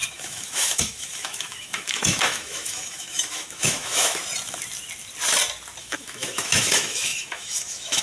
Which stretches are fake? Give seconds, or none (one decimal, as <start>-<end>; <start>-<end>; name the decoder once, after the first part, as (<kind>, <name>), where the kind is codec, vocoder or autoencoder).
0.0-4.2 (autoencoder, DAC-VAE); 5.8-8.0